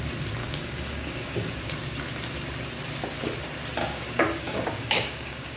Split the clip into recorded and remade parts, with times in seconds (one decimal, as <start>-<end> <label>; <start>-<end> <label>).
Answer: 0.0-0.4 recorded; 0.4-1.5 remade; 1.5-3.8 recorded; 3.8-5.6 remade